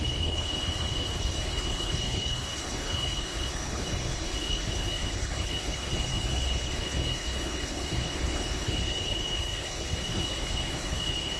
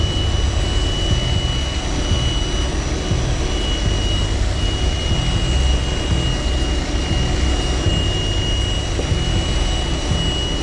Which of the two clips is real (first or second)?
second